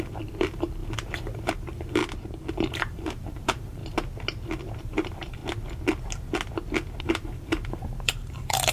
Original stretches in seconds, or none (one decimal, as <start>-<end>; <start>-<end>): 2.0-2.5; 3.8-4.8; 5.4-7.0